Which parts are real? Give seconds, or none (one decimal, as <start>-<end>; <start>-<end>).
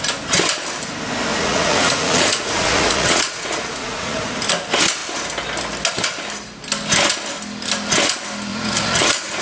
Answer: 0.0-1.3; 4.3-8.5